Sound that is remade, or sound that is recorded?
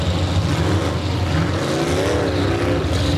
recorded